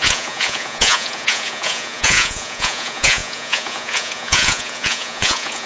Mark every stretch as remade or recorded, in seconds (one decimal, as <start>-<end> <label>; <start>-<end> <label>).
0.0-5.7 remade